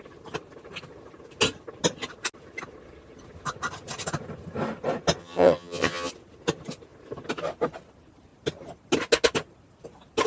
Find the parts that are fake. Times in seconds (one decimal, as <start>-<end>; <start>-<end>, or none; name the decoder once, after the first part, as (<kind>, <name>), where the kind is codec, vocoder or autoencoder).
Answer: 5.2-6.1 (vocoder, HiFi-GAN)